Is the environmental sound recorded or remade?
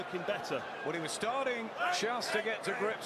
recorded